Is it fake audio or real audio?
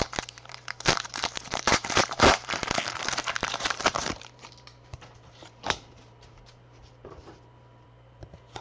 fake